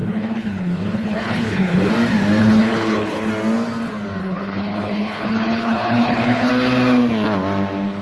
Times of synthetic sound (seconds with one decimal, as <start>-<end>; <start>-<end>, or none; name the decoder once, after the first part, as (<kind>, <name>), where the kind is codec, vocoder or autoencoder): 0.0-1.9 (codec, HILCodec); 2.4-3.3; 4.2-6.5